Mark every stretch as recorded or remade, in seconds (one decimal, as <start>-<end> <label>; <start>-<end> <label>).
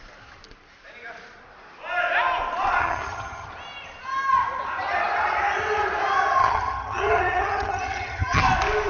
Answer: 0.0-2.8 recorded; 2.8-3.5 remade; 3.5-6.4 recorded; 6.4-8.4 remade; 8.4-8.9 recorded